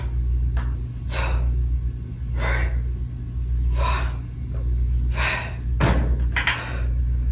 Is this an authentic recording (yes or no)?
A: yes